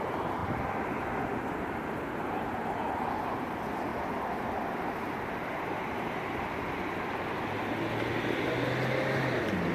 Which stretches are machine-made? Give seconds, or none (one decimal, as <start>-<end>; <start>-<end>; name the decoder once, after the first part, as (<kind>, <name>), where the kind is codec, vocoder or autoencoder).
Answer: none